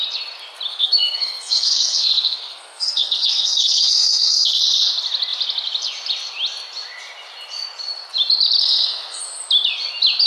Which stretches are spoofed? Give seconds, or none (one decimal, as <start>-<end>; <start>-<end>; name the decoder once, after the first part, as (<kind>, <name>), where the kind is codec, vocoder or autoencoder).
0.7-4.6 (codec, SNAC); 8.6-9.2